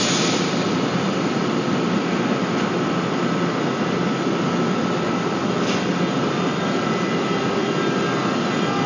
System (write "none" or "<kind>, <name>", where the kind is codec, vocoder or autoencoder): none